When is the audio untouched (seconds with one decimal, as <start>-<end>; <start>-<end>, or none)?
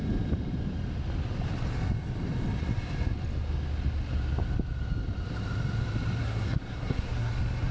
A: 0.0-6.2; 7.3-7.7